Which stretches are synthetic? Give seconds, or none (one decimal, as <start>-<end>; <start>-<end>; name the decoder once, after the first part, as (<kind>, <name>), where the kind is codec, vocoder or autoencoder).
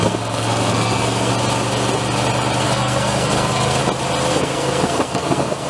0.0-1.3 (codec, SNAC); 2.6-3.8; 4.3-5.7